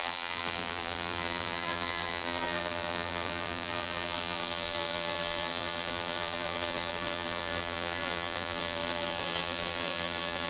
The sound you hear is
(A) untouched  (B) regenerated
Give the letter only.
B